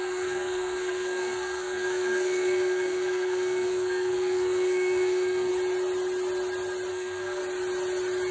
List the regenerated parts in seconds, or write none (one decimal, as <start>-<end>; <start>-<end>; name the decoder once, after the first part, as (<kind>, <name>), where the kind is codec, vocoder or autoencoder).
0.0-5.5 (codec, SNAC); 6.9-7.4